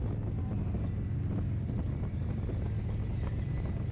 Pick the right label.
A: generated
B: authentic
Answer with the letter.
B